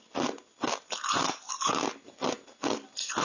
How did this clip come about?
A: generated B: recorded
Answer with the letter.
B